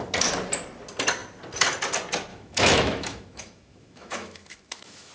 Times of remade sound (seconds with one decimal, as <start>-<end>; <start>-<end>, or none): 2.3-5.1